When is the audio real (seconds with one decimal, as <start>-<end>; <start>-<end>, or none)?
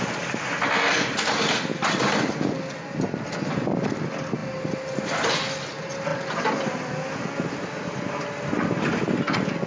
0.0-9.7